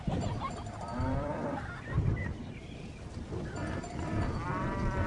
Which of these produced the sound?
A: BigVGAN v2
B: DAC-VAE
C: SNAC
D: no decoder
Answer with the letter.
A